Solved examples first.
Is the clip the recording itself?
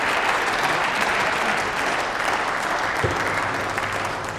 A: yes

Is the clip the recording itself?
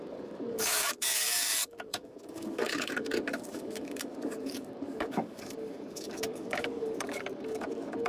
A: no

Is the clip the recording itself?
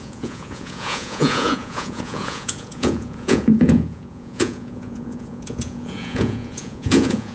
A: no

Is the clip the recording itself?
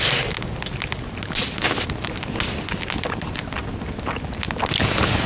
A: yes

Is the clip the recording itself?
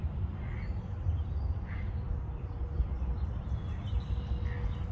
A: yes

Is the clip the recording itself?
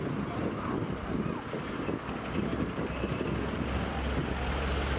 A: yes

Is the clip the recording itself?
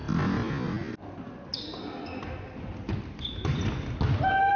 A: yes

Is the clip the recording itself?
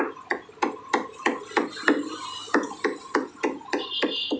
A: yes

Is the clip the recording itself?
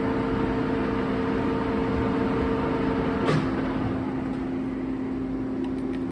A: yes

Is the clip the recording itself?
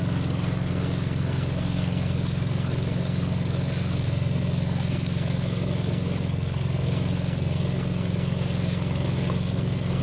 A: no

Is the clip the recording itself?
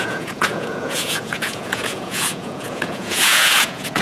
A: no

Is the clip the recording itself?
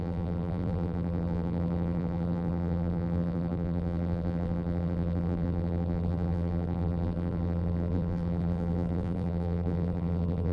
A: no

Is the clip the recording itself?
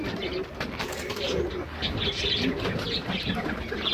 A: yes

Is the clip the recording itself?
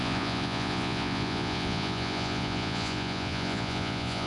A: no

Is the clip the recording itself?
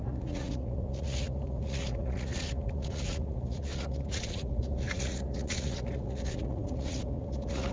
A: no